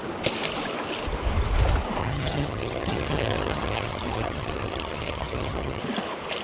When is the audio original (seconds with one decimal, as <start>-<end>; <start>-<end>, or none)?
0.0-2.0; 5.8-6.4